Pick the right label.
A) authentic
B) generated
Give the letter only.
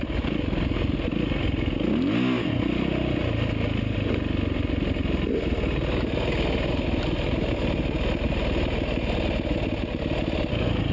A